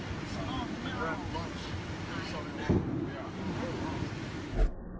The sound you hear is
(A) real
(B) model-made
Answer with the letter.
A